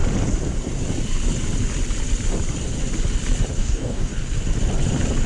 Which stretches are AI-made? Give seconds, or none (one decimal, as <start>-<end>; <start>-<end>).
3.6-4.1